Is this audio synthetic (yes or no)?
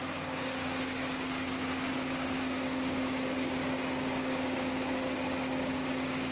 yes